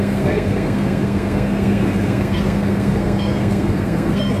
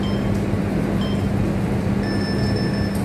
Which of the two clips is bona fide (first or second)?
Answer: second